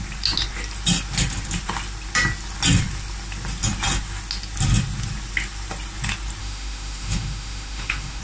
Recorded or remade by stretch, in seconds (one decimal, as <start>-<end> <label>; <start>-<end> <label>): 0.0-6.4 recorded; 6.4-8.2 remade